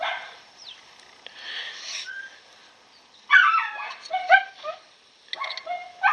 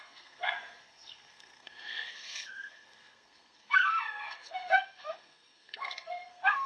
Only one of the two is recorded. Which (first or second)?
first